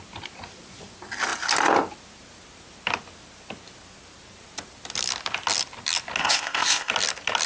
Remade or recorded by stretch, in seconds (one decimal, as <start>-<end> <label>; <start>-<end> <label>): 0.0-6.2 recorded; 6.2-6.9 remade; 6.9-7.5 recorded